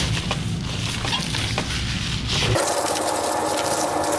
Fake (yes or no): no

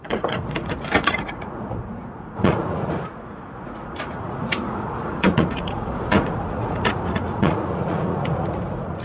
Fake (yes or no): yes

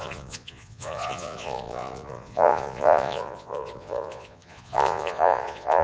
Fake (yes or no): yes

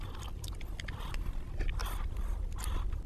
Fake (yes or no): no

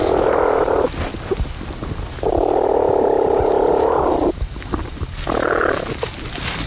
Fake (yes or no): no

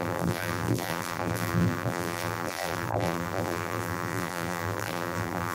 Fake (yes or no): yes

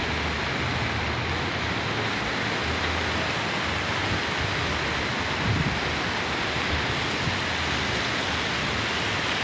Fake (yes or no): no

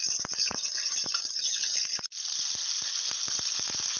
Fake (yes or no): no